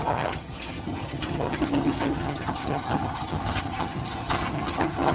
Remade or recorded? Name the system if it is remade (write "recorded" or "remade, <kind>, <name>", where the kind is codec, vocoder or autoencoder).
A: remade, vocoder, HiFi-GAN